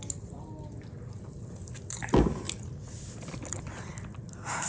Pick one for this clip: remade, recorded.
recorded